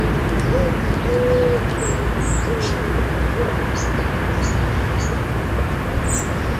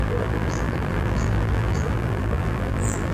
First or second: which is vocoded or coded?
second